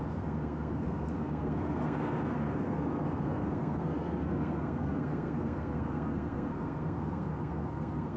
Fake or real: fake